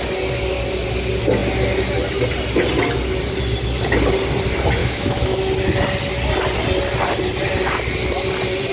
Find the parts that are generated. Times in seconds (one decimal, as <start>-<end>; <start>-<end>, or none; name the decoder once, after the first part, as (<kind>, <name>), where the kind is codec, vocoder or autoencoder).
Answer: 4.8-5.4 (autoencoder, DAC-VAE)

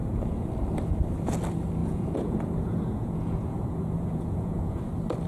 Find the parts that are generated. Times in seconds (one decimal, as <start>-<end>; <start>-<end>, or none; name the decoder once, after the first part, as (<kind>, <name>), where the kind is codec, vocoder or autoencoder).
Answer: 0.0-0.5 (vocoder, Vocos); 1.8-4.8

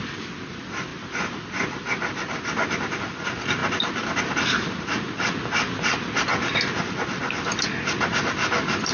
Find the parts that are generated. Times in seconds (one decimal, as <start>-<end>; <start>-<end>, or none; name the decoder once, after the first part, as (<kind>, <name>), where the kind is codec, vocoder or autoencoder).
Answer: none

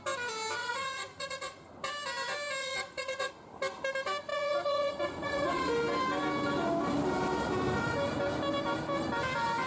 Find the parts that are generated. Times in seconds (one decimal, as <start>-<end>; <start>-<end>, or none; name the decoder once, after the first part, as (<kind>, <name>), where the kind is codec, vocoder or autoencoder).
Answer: 0.6-1.7 (vocoder, Vocos); 2.6-3.3; 4.3-5.7

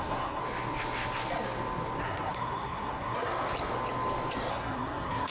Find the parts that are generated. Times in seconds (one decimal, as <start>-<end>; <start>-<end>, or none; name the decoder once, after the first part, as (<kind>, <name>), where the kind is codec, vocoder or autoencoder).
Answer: 0.0-0.4 (codec, SNAC); 2.0-3.3; 4.5-5.3

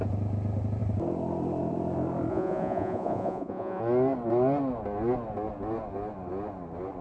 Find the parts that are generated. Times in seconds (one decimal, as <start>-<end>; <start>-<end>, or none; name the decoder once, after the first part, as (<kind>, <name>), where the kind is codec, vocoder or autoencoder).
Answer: 2.3-3.8 (vocoder, Vocos)

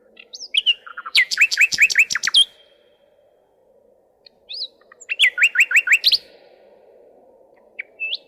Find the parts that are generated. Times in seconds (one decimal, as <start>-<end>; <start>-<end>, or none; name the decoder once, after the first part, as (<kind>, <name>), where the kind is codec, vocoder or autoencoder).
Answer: 0.9-1.9 (vocoder, BigVGAN v2)

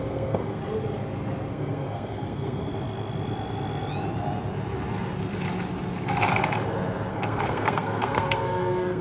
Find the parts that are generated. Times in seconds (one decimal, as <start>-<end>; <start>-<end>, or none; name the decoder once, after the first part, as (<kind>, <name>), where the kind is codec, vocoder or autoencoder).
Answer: 0.0-0.6 (codec, SNAC); 1.5-2.7; 7.1-9.0